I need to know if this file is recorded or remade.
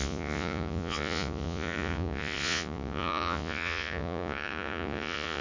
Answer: remade